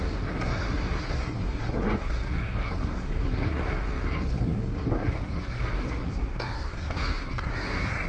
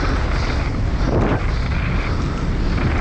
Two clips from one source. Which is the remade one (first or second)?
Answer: first